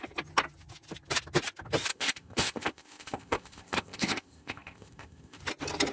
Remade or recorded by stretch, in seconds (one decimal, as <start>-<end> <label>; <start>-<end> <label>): 0.0-1.9 recorded; 1.9-5.4 remade; 5.4-5.9 recorded